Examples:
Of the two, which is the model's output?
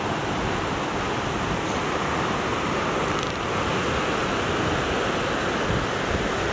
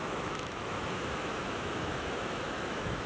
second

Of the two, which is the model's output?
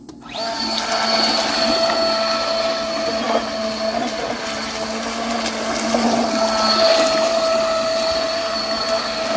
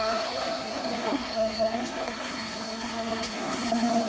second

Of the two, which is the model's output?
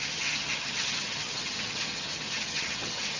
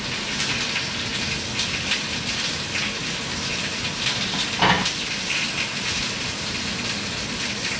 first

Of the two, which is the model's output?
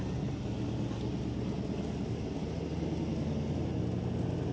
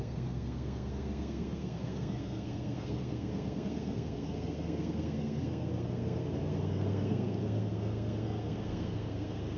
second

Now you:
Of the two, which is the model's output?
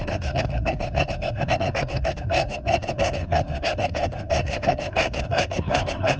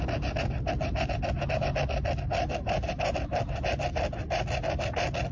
first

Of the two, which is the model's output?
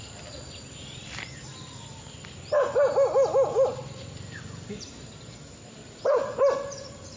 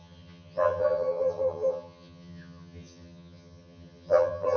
second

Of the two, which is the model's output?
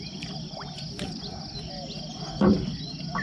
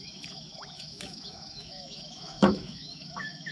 second